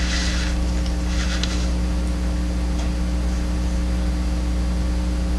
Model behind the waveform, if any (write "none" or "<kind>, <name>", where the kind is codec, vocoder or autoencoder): none